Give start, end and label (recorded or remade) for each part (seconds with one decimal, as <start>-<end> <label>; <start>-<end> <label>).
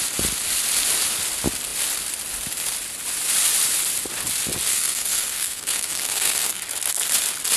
0.0-4.7 recorded; 4.7-6.6 remade; 6.6-7.6 recorded